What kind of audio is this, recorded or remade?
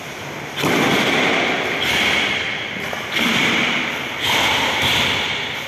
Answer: recorded